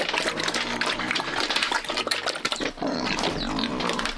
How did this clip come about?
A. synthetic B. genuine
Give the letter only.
B